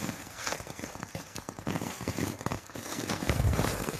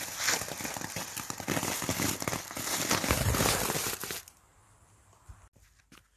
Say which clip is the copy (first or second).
first